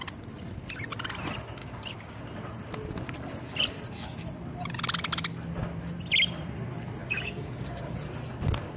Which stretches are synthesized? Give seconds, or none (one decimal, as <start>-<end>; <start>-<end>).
1.6-2.2; 7.0-7.9